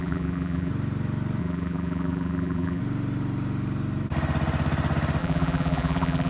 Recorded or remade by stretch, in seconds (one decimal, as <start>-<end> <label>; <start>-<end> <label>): 0.0-0.7 remade; 0.7-1.4 recorded; 1.4-2.8 remade; 2.8-5.2 recorded; 5.2-6.3 remade